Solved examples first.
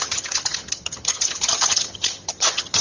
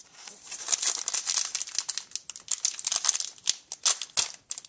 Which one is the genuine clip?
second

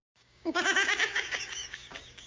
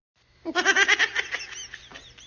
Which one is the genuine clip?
second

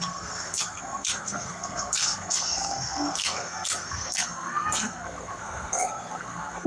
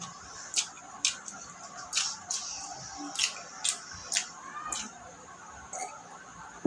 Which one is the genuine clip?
second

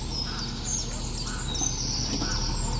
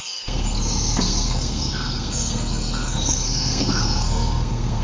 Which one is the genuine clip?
first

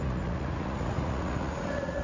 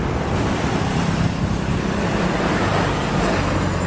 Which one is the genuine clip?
second